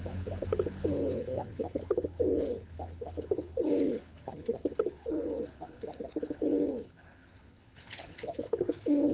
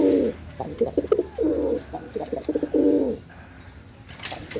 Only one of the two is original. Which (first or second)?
second